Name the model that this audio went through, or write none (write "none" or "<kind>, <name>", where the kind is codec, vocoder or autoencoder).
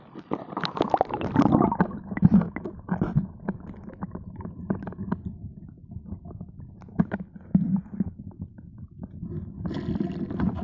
none